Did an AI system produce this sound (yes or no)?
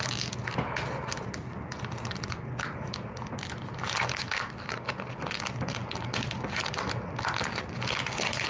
no